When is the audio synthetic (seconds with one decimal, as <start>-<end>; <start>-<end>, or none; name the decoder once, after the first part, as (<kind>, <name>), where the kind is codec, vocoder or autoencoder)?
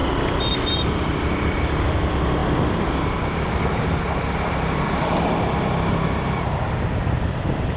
0.5-2.4 (vocoder, BigVGAN v2); 6.7-7.8